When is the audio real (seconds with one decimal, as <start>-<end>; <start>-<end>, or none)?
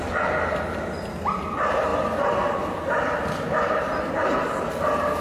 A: 0.0-5.2